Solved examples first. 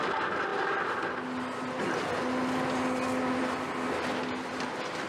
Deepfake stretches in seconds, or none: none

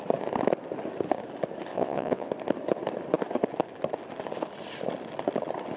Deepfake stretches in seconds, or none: 1.7-2.3 (vocoder, WaveNeXt)

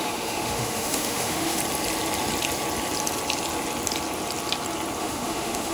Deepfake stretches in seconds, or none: 0.0-1.6 (autoencoder, DAC-VAE); 5.0-5.7

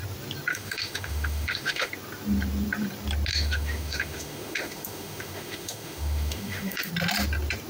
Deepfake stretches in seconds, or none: 0.5-1.9 (autoencoder, DAC-VAE); 3.3-6.9